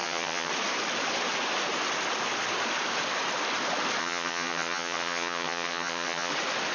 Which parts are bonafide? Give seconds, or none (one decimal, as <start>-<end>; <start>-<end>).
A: 0.5-4.0; 6.3-6.7